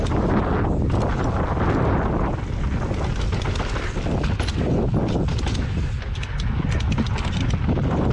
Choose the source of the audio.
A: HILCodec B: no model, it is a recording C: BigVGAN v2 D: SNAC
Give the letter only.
B